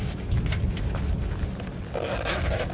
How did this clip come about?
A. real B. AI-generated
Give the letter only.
A